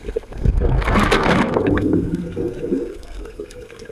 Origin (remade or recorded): remade